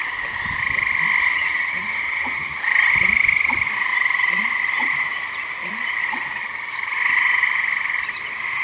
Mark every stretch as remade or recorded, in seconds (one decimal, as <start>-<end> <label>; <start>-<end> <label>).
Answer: 0.0-1.3 recorded; 1.3-2.6 remade; 2.6-8.6 recorded

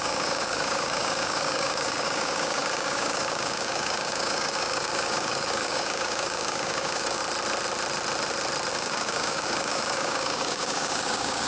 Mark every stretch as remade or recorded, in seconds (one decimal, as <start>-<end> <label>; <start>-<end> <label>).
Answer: 0.0-7.2 remade; 7.2-8.7 recorded; 8.7-11.5 remade